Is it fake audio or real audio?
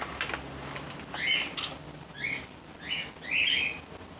real